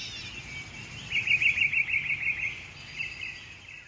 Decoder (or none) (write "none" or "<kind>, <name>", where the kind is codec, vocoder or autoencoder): none